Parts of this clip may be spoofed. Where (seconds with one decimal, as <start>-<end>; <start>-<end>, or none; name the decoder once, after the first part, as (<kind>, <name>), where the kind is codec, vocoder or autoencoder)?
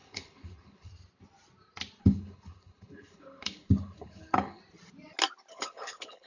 0.0-0.9 (codec, HILCodec); 2.0-4.6; 5.5-6.3